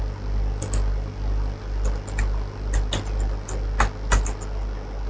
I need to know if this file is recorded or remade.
recorded